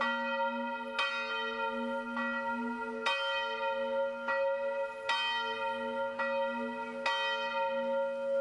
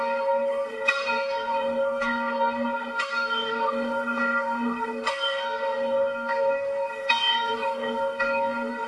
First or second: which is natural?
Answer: first